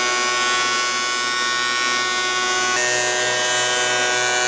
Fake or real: real